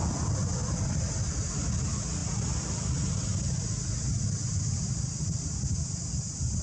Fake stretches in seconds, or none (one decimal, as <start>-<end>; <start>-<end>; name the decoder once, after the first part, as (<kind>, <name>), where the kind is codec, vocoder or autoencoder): none

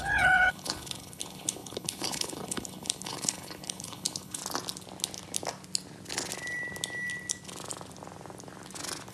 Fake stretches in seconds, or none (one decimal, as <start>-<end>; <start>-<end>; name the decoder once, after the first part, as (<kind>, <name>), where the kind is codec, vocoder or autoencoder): 0.0-4.4 (codec, HILCodec)